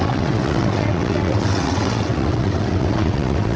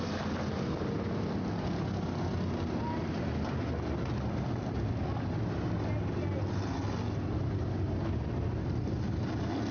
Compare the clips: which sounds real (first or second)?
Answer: second